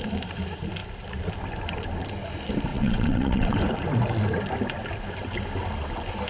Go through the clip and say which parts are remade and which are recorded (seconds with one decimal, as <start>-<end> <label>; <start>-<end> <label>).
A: 0.0-2.7 recorded; 2.7-3.6 remade; 3.6-6.3 recorded